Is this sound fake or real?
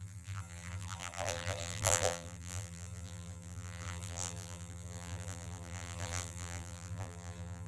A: fake